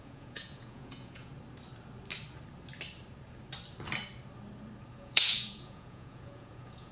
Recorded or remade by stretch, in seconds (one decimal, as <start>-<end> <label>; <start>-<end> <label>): 0.0-1.3 remade; 1.3-4.9 recorded; 4.9-6.9 remade